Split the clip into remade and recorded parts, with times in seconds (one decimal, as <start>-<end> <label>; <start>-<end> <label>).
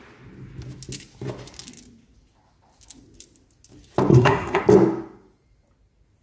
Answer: 0.0-4.1 recorded; 4.1-4.6 remade; 4.6-6.2 recorded